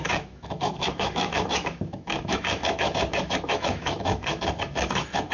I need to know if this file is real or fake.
fake